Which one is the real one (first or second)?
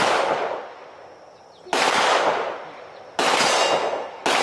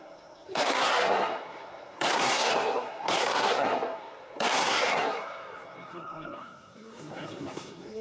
first